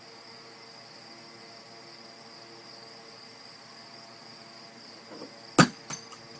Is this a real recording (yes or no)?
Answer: yes